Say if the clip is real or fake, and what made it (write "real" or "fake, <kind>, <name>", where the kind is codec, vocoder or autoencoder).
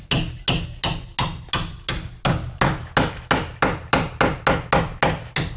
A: real